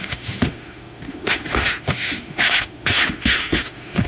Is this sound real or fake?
fake